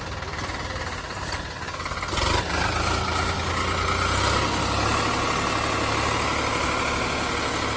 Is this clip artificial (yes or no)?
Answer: no